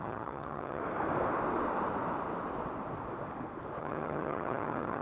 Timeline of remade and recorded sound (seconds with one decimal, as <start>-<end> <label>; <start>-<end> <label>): 0.0-0.8 remade; 0.8-3.8 recorded; 3.8-5.0 remade